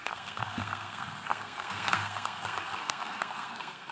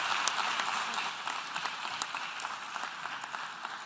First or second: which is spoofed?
first